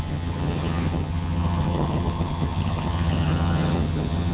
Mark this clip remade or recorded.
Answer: remade